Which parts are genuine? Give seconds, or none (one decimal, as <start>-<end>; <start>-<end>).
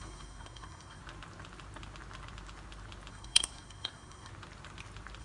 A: 1.0-3.1; 4.3-5.2